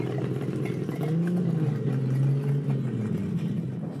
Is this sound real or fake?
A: real